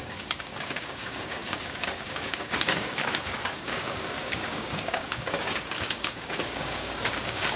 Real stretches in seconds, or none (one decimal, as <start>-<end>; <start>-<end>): none